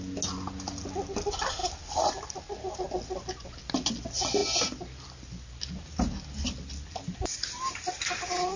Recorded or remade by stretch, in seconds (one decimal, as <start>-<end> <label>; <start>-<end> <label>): 0.0-8.6 recorded